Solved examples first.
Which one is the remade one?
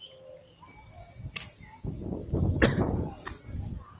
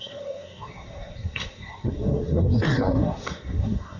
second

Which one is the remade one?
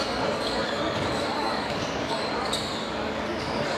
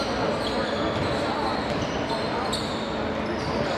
first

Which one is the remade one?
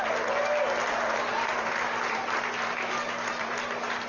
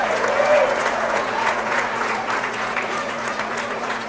second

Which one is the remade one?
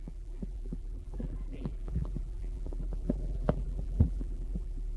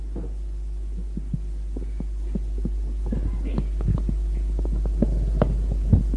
first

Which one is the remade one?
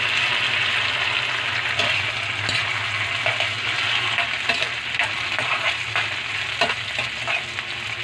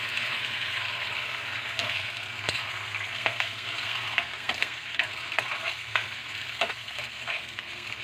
second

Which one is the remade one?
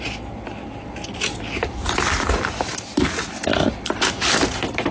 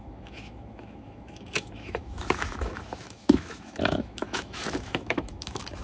second